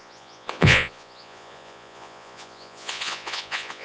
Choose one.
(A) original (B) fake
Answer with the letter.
B